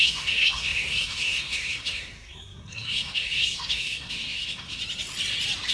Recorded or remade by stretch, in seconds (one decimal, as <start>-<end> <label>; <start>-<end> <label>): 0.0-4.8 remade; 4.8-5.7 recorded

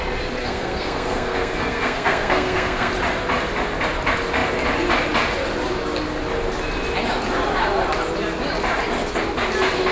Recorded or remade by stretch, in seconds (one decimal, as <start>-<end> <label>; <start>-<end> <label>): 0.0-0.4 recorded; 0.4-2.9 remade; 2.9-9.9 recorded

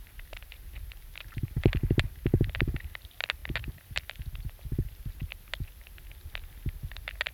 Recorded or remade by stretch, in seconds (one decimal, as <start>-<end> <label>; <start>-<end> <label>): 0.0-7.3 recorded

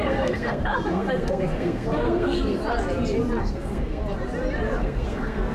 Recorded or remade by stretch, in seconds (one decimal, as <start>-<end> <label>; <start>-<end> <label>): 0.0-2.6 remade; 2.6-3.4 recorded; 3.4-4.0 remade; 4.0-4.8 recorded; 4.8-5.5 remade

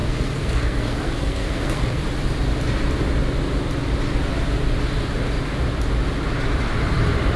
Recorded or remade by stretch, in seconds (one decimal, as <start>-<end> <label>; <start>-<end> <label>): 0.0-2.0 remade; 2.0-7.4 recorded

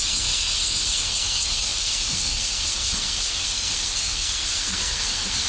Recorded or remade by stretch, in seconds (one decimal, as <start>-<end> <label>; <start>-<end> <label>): 0.0-5.5 remade

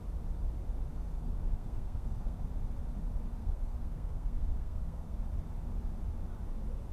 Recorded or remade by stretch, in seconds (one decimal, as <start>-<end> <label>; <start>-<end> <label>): 0.0-0.9 recorded; 0.9-2.4 remade; 2.4-3.4 recorded; 3.4-5.2 remade; 5.2-6.9 recorded